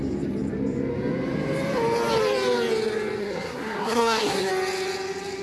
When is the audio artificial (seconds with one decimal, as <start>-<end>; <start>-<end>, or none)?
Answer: 3.2-4.5